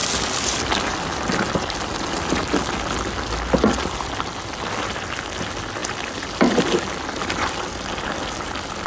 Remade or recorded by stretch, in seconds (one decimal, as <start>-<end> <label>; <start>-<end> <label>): 0.0-8.9 recorded